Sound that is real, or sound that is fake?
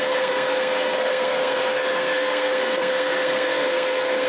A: fake